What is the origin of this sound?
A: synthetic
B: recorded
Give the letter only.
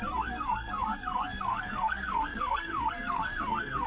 A